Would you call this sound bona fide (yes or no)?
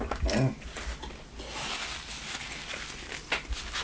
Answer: yes